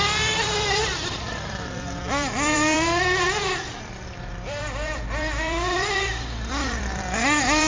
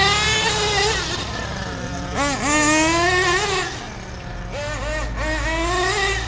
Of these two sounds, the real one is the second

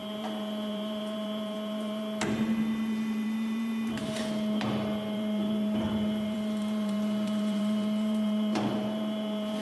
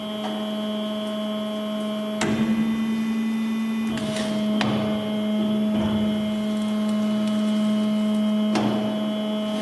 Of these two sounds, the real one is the second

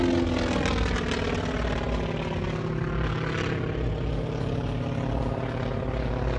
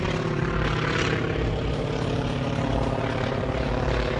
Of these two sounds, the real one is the first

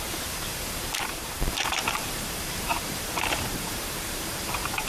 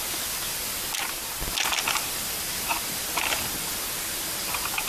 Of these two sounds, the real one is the second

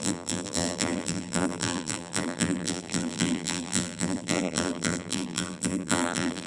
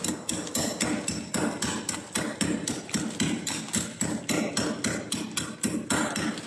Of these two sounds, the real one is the second